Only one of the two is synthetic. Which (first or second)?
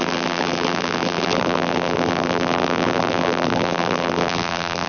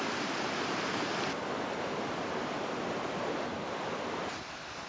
first